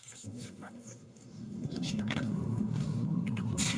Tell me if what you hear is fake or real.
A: fake